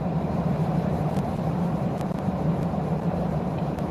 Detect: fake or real fake